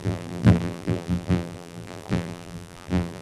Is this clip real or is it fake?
fake